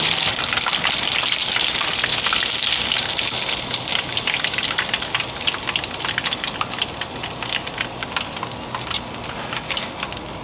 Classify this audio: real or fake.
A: real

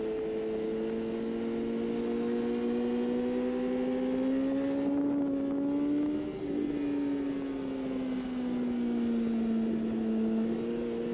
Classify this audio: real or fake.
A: real